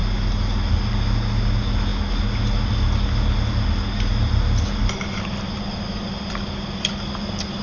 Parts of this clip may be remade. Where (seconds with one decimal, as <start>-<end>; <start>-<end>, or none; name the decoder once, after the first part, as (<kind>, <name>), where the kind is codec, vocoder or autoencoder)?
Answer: none